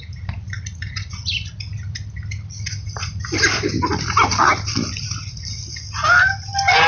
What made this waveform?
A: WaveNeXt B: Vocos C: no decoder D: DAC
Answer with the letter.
C